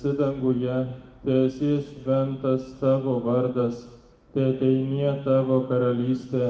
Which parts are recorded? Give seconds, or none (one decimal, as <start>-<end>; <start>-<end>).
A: none